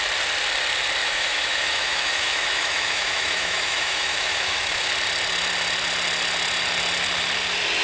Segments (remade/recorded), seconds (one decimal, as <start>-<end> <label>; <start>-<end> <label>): 0.0-1.0 recorded; 1.0-4.9 remade; 4.9-7.8 recorded